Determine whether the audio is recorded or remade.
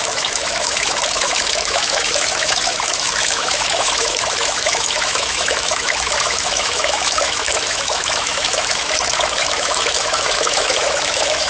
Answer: remade